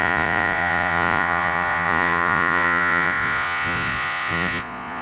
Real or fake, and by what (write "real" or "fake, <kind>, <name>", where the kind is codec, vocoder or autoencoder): fake, vocoder, Vocos